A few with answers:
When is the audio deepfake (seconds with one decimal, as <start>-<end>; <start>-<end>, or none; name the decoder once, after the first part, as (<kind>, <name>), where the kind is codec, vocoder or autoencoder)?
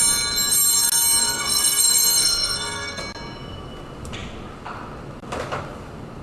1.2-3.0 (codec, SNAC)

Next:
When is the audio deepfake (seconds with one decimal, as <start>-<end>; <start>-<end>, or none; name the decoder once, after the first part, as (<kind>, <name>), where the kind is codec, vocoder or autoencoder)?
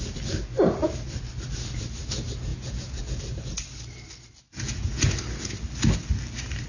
2.5-3.2 (vocoder, Vocos); 4.5-5.5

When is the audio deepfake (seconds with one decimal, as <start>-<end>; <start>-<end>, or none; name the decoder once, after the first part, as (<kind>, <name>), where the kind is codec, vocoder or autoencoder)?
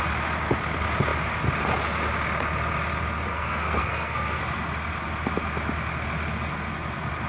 3.3-4.4 (codec, SNAC)